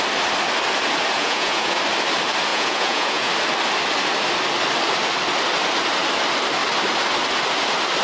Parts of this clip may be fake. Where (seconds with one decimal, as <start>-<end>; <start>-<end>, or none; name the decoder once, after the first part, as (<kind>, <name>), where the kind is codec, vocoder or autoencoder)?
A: 1.2-1.8 (vocoder, Vocos); 2.5-3.3